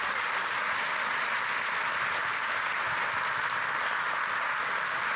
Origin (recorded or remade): recorded